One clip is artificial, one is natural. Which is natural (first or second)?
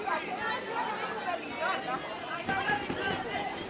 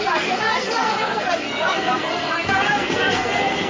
first